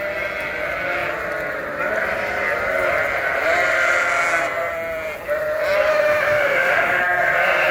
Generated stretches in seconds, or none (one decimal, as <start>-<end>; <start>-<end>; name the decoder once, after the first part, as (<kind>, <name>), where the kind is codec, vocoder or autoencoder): 5.9-7.0 (autoencoder, DAC-VAE)